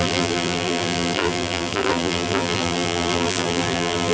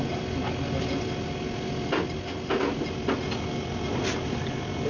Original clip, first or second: second